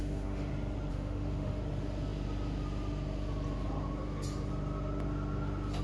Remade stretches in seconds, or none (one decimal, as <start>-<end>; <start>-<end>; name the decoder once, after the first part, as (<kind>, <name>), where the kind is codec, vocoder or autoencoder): 0.0-0.5 (autoencoder, DAC-VAE); 0.9-1.6